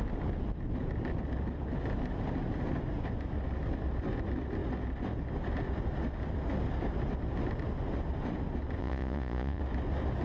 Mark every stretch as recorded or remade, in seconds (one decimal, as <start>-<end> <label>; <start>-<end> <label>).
0.0-8.8 recorded; 8.8-9.6 remade; 9.6-10.2 recorded